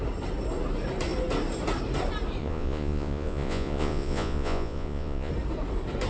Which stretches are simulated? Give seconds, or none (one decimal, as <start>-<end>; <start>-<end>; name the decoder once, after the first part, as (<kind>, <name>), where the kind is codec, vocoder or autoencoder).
2.4-5.3 (vocoder, Vocos)